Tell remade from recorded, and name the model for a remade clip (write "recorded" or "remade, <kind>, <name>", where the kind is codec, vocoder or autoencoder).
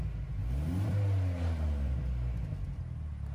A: recorded